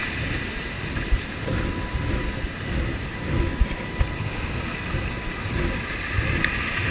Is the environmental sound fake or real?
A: real